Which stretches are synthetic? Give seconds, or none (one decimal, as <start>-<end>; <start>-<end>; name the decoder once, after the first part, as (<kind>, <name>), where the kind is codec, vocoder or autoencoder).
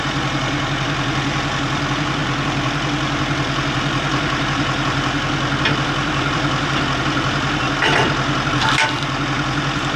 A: 0.0-8.0 (vocoder, BigVGAN v2); 8.5-10.0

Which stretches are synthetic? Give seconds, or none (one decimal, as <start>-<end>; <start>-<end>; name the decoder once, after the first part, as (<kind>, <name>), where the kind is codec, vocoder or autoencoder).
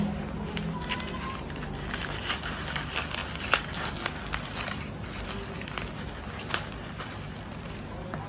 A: none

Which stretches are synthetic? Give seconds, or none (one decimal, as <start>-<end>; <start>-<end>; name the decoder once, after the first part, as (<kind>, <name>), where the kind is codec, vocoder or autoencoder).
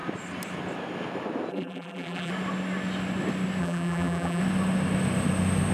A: 1.5-2.3 (vocoder, BigVGAN v2); 3.6-4.4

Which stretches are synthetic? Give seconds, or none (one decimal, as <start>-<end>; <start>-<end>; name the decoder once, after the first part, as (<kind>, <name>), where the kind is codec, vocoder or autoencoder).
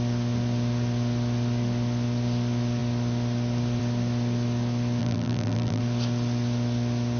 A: 5.0-5.8 (vocoder, BigVGAN v2)